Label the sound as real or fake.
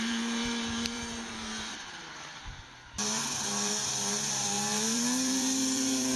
fake